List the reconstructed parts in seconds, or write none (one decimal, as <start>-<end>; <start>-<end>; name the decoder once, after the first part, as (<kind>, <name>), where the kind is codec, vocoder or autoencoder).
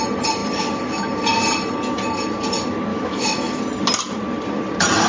2.9-3.6 (autoencoder, DAC-VAE)